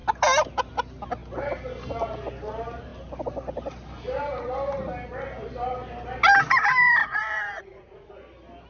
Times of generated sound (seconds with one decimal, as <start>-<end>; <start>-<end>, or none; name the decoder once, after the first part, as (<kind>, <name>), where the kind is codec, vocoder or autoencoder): 7.0-8.1 (vocoder, Vocos)